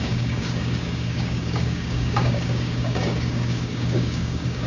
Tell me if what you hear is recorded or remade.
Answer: remade